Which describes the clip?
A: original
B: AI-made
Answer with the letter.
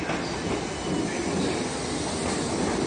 A